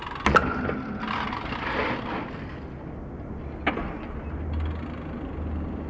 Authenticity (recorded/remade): recorded